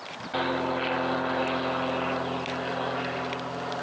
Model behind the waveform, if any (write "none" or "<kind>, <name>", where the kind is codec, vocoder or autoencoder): none